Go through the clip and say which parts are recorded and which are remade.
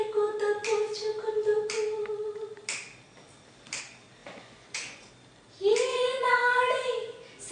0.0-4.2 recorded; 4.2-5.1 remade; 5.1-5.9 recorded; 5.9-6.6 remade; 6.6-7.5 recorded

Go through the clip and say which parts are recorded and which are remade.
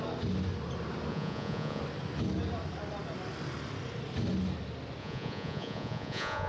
0.0-1.1 recorded; 1.1-1.8 remade; 1.8-5.0 recorded; 5.0-6.5 remade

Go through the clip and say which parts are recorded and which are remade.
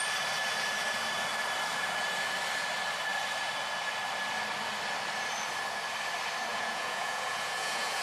0.0-6.5 recorded; 6.5-8.0 remade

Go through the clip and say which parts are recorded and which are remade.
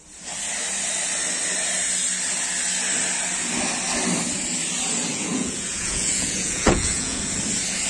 0.0-5.1 recorded; 5.1-7.2 remade; 7.2-7.9 recorded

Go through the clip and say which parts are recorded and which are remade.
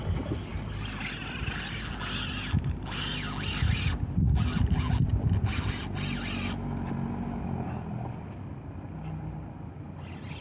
0.0-10.4 recorded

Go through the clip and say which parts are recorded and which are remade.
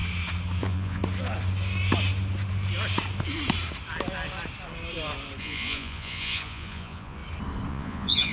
0.0-0.6 recorded; 0.6-1.0 remade; 1.0-5.4 recorded; 5.4-7.2 remade; 7.2-7.7 recorded; 7.7-8.3 remade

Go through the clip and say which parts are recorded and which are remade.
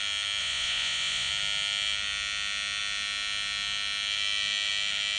0.0-0.4 recorded; 0.4-1.3 remade; 1.3-5.2 recorded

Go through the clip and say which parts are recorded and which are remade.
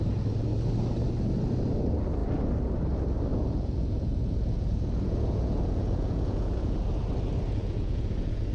0.0-3.3 recorded; 3.3-6.8 remade; 6.8-7.6 recorded; 7.6-8.5 remade